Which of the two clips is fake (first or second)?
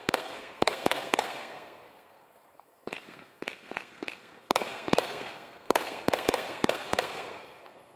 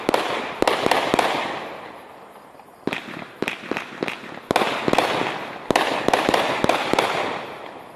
first